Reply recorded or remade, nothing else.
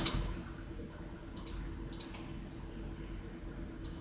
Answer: recorded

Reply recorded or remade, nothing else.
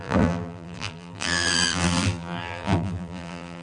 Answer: remade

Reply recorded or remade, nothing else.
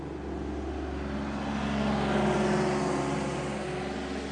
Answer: recorded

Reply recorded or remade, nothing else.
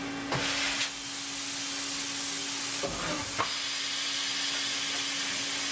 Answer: recorded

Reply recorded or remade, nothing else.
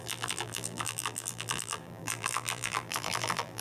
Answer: remade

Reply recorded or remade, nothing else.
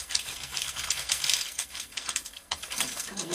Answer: remade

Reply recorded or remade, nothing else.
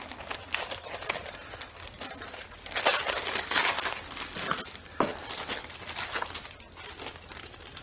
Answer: recorded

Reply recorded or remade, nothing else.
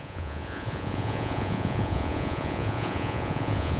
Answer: remade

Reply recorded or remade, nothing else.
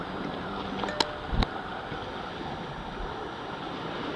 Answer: recorded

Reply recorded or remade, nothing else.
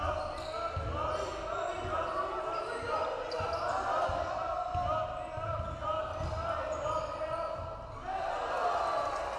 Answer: recorded